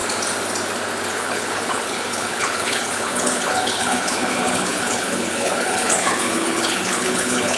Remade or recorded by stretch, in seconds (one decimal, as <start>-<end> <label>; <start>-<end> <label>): 0.0-1.1 recorded; 1.1-7.6 remade